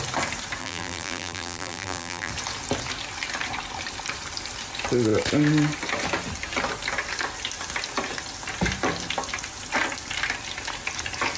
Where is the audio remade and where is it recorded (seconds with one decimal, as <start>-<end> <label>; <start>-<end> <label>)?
0.0-0.6 recorded; 0.6-2.3 remade; 2.3-11.4 recorded